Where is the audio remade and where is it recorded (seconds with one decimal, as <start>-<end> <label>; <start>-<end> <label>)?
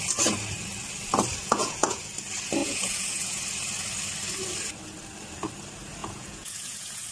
0.0-1.4 recorded; 1.4-2.0 remade; 2.0-2.6 recorded; 2.6-3.4 remade; 3.4-6.0 recorded; 6.0-7.1 remade